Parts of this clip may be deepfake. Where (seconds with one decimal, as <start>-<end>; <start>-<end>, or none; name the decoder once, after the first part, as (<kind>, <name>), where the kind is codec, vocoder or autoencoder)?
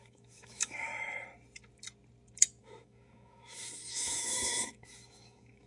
0.0-0.9 (autoencoder, DAC-VAE); 2.6-5.7